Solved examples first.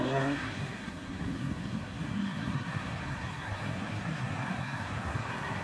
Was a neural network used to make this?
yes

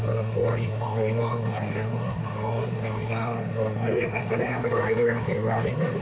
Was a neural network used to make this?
yes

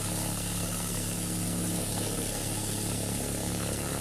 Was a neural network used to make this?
yes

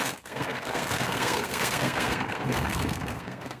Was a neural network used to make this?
yes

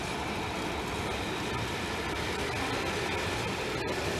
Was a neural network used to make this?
no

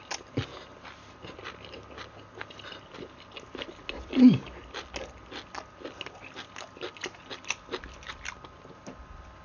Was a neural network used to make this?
no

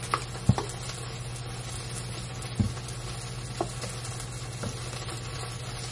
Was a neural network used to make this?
no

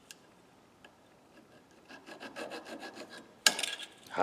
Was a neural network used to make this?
no